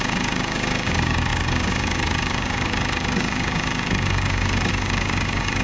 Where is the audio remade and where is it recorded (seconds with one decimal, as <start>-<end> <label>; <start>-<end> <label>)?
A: 0.0-5.6 remade